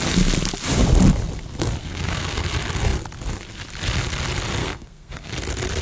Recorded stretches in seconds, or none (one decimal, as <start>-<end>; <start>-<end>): 0.0-1.8; 2.4-4.6; 5.3-5.8